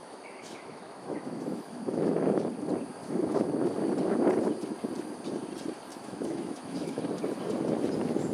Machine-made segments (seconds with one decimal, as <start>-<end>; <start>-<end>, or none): 0.0-2.4; 3.0-3.5; 5.9-7.0